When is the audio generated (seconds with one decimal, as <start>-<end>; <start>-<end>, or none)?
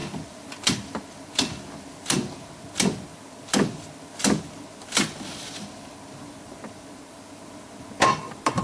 none